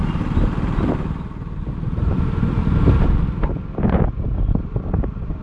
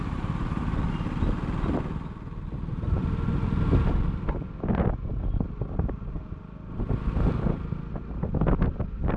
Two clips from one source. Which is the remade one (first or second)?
first